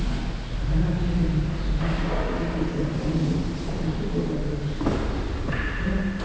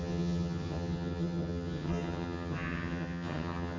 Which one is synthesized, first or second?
second